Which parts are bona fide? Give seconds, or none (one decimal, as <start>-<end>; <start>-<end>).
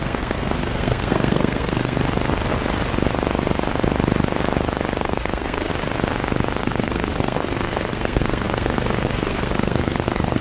2.0-5.0; 5.7-6.6